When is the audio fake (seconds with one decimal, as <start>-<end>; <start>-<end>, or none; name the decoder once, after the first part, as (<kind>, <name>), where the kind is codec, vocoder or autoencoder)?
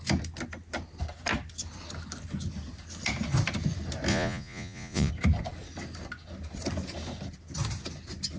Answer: 4.1-5.1 (vocoder, Vocos)